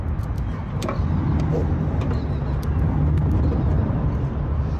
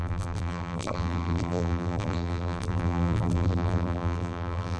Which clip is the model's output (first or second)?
second